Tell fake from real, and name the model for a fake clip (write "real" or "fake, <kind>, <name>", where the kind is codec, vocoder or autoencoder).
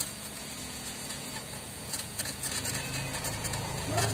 fake, vocoder, Vocos